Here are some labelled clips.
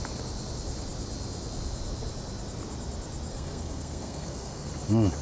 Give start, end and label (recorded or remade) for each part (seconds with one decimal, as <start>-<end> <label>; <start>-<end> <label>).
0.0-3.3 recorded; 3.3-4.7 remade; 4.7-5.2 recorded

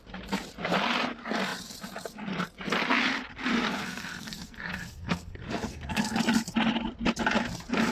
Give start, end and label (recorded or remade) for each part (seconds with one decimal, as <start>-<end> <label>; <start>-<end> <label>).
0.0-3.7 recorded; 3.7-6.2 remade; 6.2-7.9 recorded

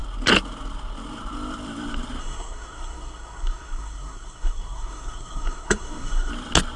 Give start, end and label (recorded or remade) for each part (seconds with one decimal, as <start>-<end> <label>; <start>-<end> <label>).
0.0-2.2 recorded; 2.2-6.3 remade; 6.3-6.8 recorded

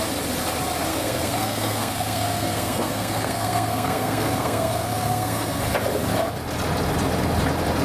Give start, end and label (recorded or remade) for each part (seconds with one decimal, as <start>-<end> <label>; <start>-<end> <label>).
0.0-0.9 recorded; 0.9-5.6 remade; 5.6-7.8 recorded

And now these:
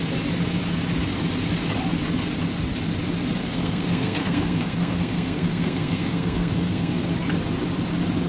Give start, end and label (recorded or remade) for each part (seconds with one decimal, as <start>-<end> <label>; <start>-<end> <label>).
0.0-3.4 recorded; 3.4-7.1 remade; 7.1-8.3 recorded

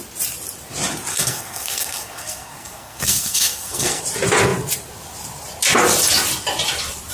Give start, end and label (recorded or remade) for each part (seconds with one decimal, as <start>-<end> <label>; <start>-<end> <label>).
0.0-1.1 recorded; 1.1-4.0 remade; 4.0-7.1 recorded